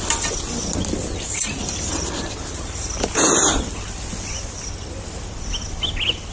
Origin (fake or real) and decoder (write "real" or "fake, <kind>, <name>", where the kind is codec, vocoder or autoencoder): real